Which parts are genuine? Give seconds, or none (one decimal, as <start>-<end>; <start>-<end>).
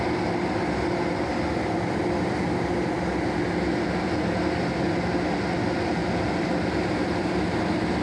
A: 0.0-8.0